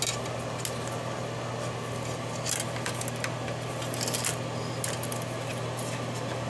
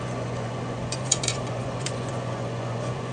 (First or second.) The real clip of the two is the first